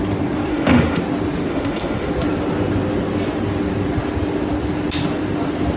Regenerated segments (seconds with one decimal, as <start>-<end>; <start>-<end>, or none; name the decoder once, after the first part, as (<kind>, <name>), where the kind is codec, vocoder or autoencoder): 0.5-1.0 (autoencoder, DAC-VAE); 1.5-2.1